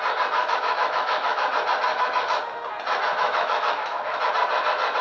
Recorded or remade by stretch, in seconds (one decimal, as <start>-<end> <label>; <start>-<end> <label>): 0.0-0.4 recorded; 0.4-1.5 remade; 1.5-1.9 recorded; 1.9-2.4 remade; 2.4-3.1 recorded; 3.1-4.3 remade; 4.3-5.0 recorded